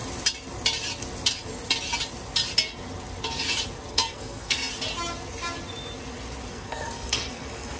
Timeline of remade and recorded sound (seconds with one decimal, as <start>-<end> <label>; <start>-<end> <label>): 0.0-3.9 recorded; 3.9-4.7 remade; 4.7-6.5 recorded; 6.5-7.8 remade